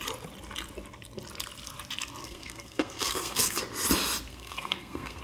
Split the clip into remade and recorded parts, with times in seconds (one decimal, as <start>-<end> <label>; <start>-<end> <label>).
0.0-2.2 recorded; 2.2-3.6 remade; 3.6-4.3 recorded; 4.3-5.2 remade